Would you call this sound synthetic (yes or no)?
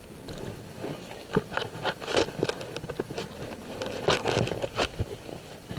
no